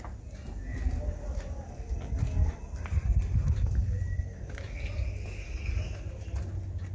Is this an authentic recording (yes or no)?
yes